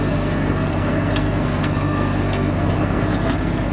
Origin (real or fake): fake